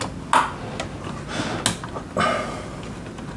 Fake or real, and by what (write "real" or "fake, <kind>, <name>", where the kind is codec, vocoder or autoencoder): real